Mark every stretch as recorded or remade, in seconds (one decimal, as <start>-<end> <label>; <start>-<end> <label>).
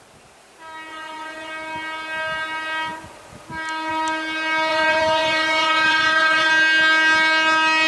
0.0-0.9 recorded; 0.9-1.5 remade; 1.5-4.7 recorded; 4.7-6.5 remade; 6.5-7.9 recorded